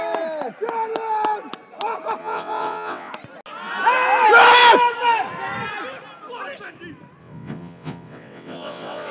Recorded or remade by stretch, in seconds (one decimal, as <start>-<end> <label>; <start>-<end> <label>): 0.0-2.2 recorded; 2.2-3.1 remade; 3.1-7.2 recorded; 7.2-9.1 remade